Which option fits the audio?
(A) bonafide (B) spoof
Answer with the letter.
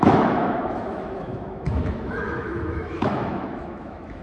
B